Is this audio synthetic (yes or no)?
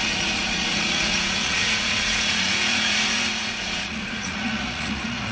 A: yes